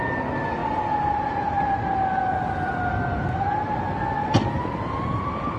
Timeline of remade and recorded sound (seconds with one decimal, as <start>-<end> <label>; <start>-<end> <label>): 0.0-5.6 recorded